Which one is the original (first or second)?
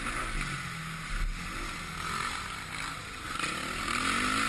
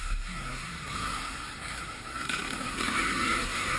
first